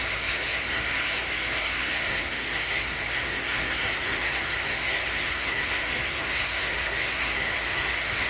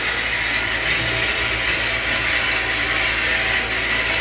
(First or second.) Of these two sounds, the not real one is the first